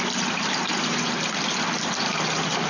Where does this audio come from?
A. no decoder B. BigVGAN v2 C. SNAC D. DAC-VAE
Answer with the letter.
B